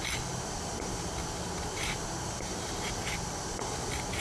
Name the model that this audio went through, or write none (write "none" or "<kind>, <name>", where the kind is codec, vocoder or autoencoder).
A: none